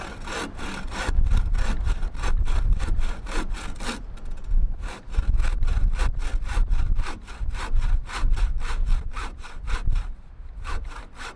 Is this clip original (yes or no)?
yes